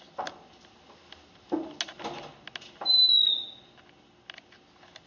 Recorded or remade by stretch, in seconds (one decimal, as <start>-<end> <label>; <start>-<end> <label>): 0.0-5.1 recorded